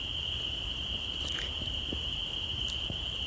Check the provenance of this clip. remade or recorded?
recorded